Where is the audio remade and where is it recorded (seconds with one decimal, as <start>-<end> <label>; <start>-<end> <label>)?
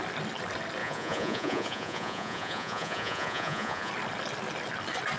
0.0-0.8 recorded; 0.8-3.9 remade; 3.9-5.2 recorded